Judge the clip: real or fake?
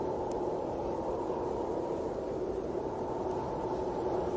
real